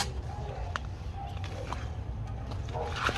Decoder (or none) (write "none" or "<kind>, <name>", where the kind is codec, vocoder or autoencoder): none